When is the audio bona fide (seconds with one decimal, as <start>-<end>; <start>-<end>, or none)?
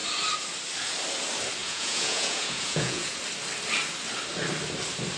0.0-1.6; 3.2-5.2